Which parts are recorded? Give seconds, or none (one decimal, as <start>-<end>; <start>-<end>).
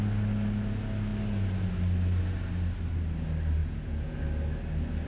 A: 0.0-3.6; 4.2-5.1